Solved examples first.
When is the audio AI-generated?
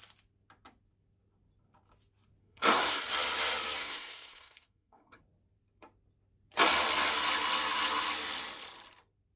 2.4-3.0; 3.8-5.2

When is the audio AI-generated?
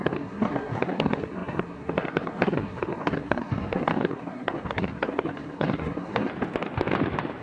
0.0-6.3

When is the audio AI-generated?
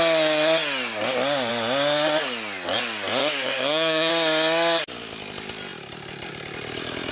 3.2-4.1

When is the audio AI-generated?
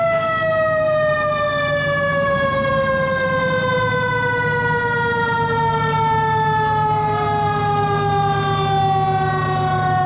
2.1-2.7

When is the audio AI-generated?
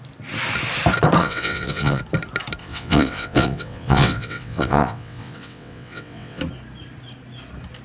1.2-2.0; 2.6-6.4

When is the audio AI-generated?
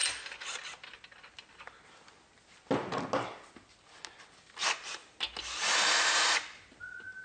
none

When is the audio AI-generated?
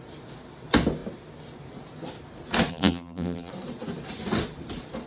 2.7-3.5